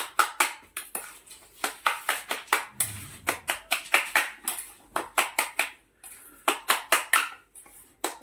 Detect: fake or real real